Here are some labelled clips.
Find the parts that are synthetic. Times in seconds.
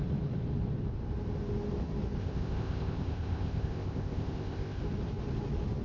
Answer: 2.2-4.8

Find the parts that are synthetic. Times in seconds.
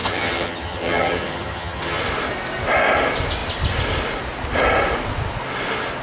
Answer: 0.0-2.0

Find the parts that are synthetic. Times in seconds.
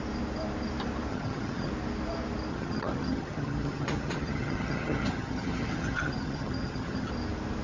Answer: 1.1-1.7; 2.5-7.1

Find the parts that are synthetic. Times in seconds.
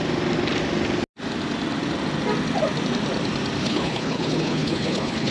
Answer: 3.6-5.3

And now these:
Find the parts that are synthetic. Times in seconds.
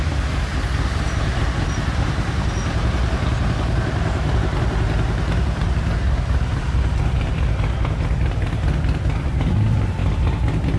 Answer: 0.0-10.8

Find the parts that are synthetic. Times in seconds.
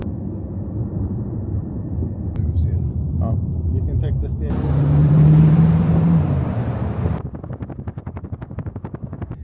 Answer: 0.8-4.3; 5.0-6.2